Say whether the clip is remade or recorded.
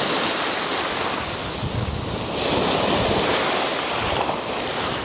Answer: recorded